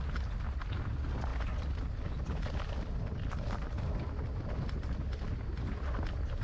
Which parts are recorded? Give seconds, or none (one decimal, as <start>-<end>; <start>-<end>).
0.0-6.4